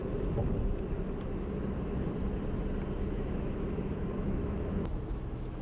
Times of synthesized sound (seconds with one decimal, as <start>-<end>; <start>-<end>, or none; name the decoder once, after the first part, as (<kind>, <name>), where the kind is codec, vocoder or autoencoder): 3.1-5.6 (autoencoder, DAC-VAE)